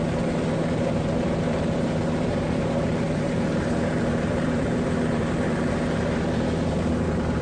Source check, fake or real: fake